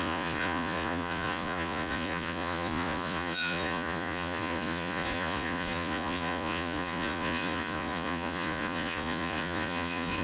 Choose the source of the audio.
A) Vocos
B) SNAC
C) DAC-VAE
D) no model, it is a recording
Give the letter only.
A